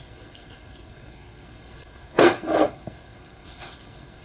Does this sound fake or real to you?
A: fake